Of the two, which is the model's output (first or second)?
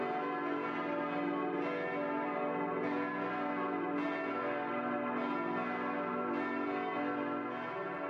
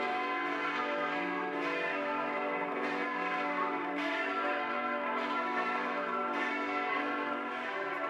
second